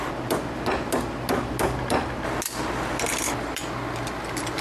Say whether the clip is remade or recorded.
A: recorded